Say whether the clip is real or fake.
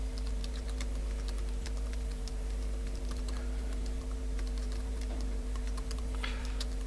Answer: fake